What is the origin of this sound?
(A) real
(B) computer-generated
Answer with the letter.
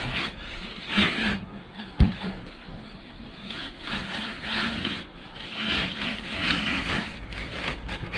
B